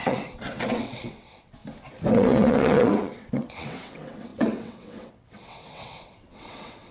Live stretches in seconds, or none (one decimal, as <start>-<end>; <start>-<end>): 1.6-2.1